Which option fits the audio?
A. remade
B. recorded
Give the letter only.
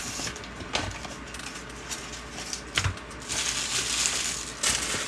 B